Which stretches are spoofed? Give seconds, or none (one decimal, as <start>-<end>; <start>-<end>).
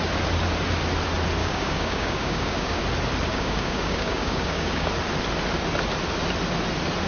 1.4-2.8; 3.3-4.9